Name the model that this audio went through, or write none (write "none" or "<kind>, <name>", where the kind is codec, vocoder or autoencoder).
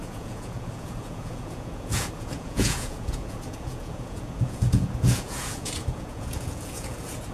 vocoder, Vocos